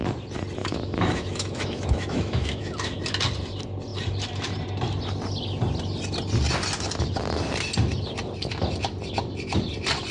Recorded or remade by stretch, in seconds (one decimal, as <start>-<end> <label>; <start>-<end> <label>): 0.0-0.6 recorded; 0.6-3.0 remade; 3.0-10.1 recorded